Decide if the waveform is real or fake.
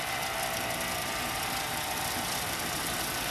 real